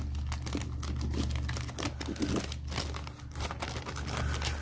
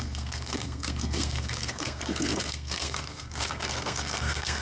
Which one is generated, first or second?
second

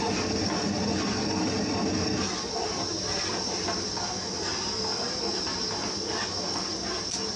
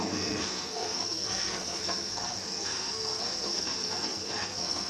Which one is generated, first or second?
second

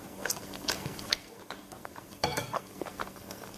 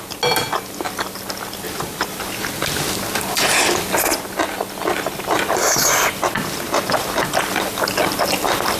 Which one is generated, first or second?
first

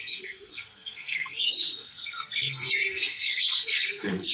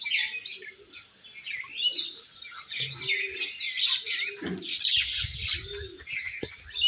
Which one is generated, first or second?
first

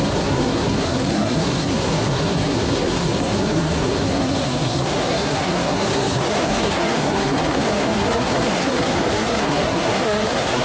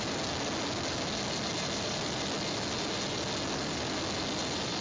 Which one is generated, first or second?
first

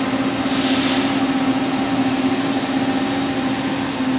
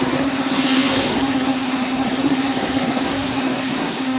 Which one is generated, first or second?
second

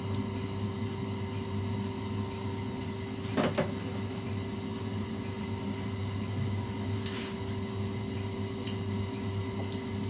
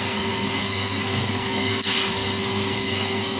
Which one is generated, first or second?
second